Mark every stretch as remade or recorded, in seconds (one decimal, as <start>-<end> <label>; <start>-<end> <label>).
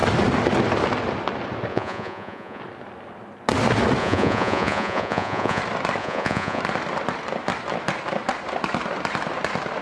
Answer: 0.0-1.7 recorded; 1.7-2.6 remade; 2.6-4.0 recorded; 4.0-5.6 remade; 5.6-6.0 recorded; 6.0-6.6 remade; 6.6-9.8 recorded